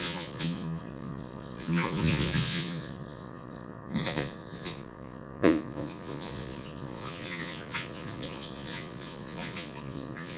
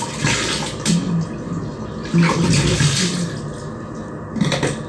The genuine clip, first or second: second